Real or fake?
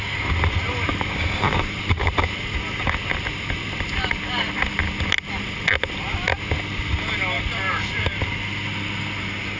real